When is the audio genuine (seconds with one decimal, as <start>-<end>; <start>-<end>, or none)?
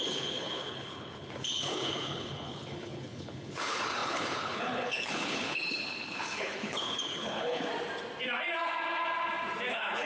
7.7-9.7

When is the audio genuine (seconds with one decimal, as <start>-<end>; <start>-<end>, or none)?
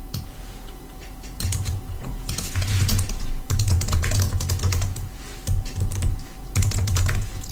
5.4-6.4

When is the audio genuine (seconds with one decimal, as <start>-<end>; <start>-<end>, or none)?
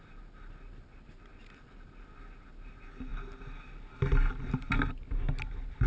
0.0-5.9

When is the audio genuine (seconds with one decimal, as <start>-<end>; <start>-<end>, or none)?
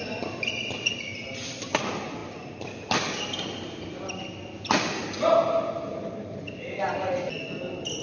0.0-8.0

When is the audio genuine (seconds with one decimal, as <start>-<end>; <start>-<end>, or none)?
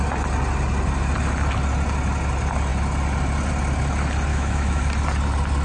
0.0-4.3; 4.9-5.6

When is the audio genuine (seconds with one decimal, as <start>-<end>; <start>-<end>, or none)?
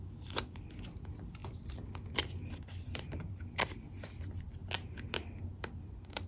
4.6-5.4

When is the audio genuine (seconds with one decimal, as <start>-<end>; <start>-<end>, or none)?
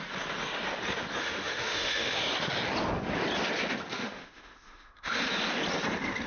0.0-1.2; 2.2-3.9; 5.2-6.3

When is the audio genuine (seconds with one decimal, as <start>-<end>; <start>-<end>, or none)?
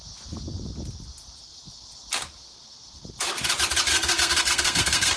0.0-3.9